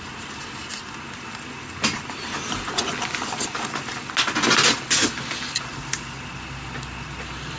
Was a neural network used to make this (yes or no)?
no